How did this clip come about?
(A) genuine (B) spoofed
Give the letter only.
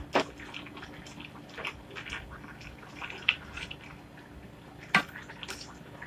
A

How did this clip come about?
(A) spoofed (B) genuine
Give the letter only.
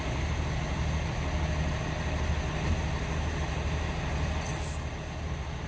B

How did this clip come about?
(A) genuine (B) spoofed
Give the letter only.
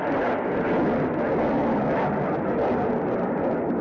A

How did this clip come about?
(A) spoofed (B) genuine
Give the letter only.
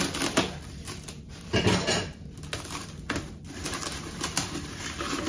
B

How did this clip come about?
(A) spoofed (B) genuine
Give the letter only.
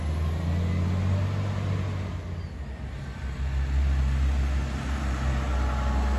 B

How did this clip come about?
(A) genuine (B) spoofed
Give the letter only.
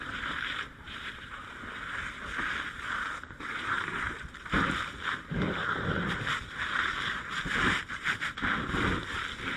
B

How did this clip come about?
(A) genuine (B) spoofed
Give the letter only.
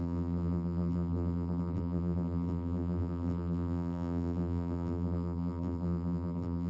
B